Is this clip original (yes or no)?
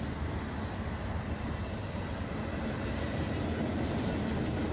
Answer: yes